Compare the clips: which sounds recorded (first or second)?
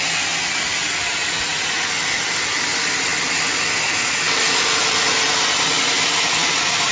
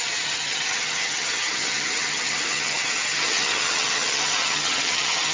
first